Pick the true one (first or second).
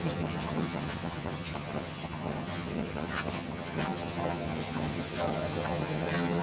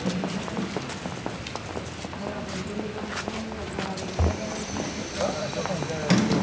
second